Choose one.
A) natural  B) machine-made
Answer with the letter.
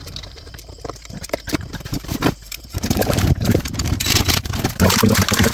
B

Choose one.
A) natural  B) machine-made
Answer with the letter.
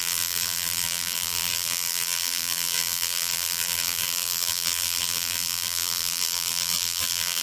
B